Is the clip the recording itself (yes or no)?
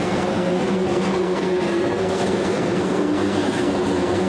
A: no